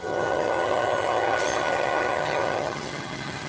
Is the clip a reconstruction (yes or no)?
yes